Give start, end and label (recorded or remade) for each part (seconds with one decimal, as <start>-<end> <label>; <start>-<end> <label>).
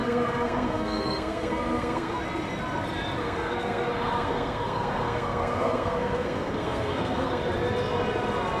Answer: 0.0-2.2 remade; 2.2-3.2 recorded; 3.2-7.4 remade; 7.4-8.6 recorded